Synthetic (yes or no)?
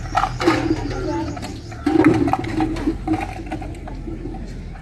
no